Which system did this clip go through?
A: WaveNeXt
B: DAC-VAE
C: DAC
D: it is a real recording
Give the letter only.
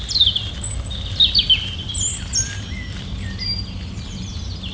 D